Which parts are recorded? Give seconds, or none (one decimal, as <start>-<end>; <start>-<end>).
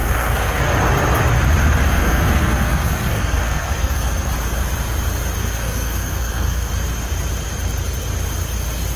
0.6-2.0; 4.3-5.4; 6.7-9.0